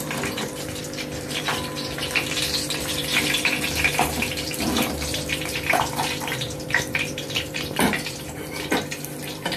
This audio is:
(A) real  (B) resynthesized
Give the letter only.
B